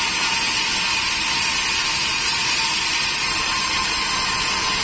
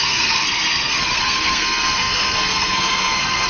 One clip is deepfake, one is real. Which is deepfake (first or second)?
second